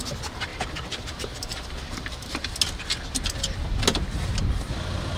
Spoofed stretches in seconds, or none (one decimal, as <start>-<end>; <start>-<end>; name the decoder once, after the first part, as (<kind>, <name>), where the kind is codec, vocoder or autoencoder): 0.5-2.5 (vocoder, BigVGAN v2)